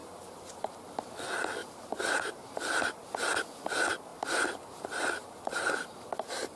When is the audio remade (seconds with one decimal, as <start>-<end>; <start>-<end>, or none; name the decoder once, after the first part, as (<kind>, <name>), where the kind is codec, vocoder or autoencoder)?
0.0-0.8 (vocoder, BigVGAN v2); 1.6-3.0; 4.1-5.7